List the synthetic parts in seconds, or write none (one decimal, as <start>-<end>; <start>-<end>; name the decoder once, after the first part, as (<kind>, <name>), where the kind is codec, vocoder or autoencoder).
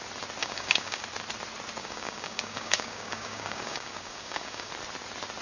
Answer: 0.4-1.0 (codec, DAC); 1.8-4.7